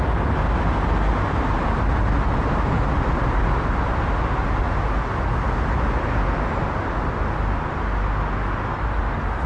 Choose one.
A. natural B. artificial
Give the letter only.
A